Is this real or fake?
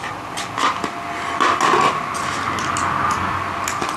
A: real